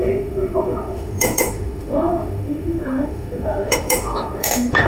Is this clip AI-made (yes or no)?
yes